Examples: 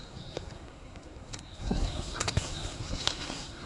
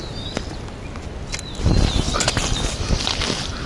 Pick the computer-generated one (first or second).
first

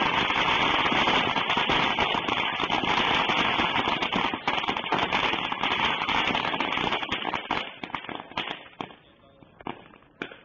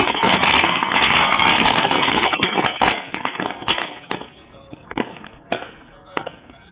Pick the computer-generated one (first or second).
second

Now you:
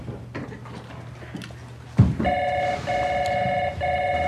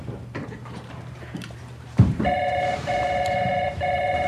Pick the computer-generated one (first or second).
second